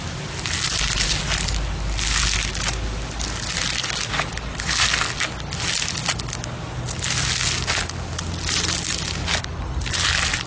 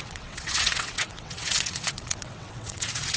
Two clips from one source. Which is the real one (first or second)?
first